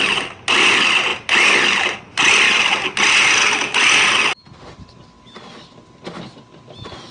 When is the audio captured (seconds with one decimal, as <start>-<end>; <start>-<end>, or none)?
0.0-7.1